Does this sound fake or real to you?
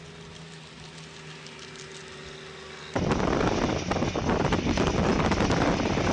real